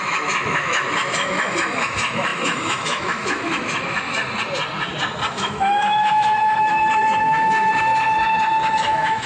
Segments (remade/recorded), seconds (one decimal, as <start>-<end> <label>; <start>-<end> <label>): 0.0-4.2 remade; 4.2-5.3 recorded; 5.3-7.9 remade; 7.9-8.7 recorded; 8.7-9.3 remade